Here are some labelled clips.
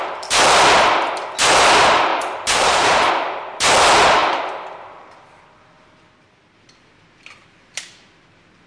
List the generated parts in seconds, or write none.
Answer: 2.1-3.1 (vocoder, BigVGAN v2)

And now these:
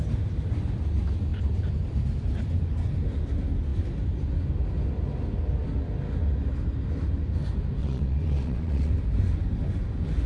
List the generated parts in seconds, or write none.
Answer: 7.8-8.9 (vocoder, Vocos)